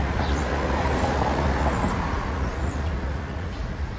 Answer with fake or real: fake